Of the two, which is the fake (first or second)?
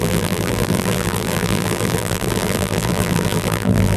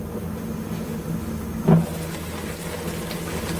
first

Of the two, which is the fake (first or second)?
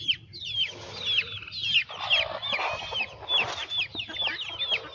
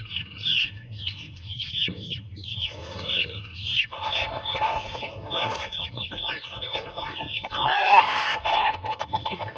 second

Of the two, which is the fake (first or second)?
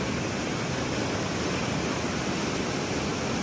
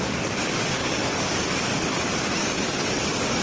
second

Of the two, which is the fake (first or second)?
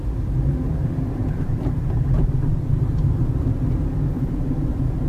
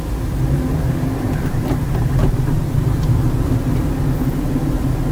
first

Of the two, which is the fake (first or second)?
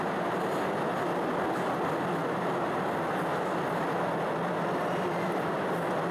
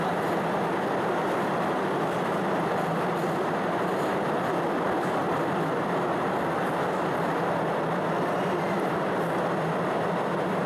second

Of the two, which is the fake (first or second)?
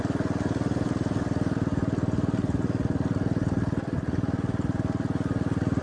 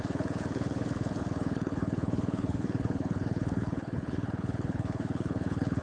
second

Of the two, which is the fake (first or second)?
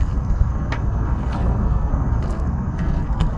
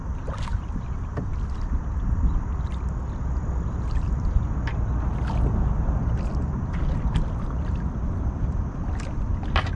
first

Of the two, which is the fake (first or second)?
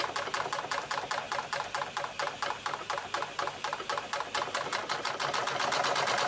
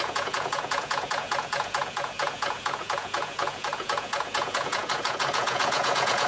second